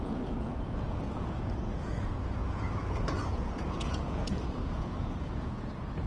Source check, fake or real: fake